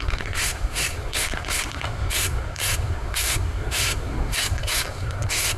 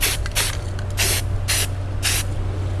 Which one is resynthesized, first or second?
first